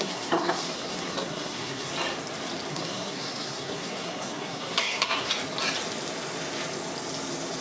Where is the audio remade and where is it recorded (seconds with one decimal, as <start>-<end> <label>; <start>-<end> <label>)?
0.0-1.9 remade; 1.9-2.7 recorded; 2.7-5.3 remade; 5.3-7.6 recorded